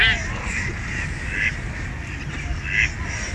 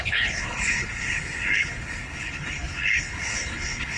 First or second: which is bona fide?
first